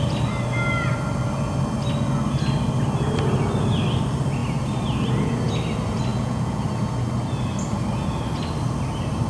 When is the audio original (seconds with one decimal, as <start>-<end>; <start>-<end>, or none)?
0.0-6.1; 6.6-9.3

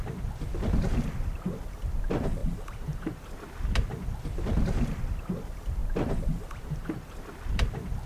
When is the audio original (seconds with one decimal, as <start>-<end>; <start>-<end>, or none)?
0.0-2.4; 3.1-8.1